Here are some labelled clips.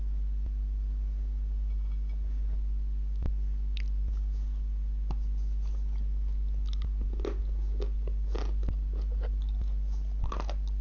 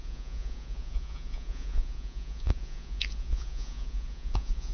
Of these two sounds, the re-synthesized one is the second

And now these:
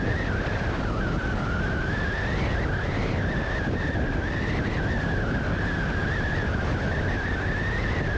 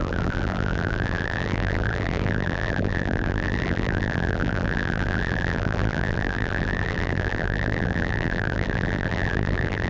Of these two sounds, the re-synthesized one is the second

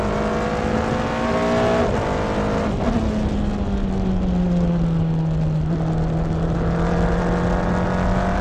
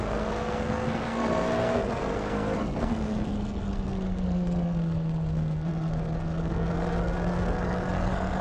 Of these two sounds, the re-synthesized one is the second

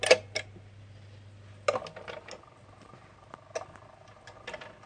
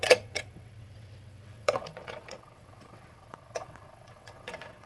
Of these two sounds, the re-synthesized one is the second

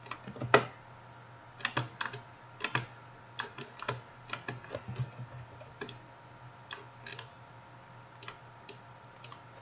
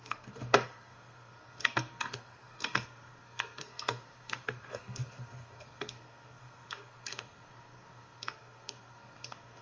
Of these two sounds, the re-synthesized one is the second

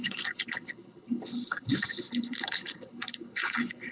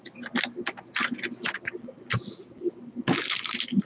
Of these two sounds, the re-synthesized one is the first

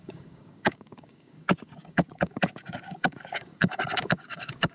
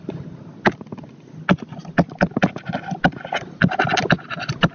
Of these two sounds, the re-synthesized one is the first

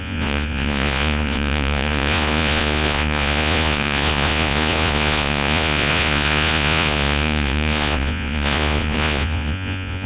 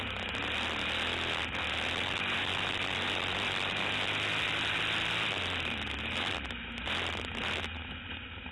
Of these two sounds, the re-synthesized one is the first